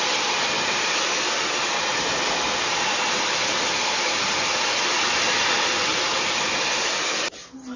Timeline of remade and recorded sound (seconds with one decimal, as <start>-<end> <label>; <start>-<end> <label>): 0.0-5.9 recorded; 5.9-6.5 remade; 6.5-7.8 recorded